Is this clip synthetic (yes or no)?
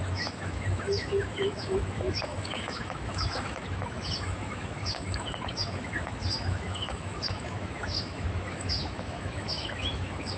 yes